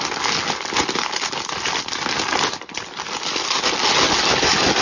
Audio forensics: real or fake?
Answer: real